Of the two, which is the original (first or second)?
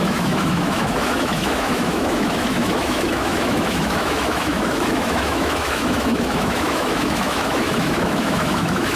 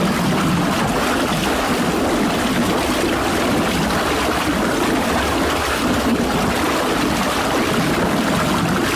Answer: second